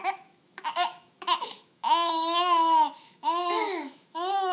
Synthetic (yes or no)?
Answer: yes